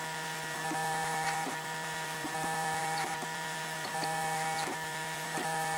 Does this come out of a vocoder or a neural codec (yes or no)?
yes